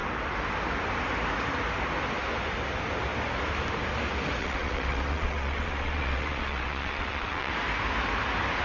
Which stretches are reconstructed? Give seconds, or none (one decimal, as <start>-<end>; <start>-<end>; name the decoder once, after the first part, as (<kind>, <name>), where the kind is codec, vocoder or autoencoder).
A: 4.4-7.5 (vocoder, WaveNeXt)